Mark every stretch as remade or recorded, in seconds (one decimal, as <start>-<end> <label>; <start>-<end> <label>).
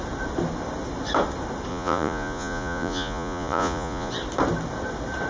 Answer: 0.0-1.7 recorded; 1.7-4.1 remade; 4.1-5.3 recorded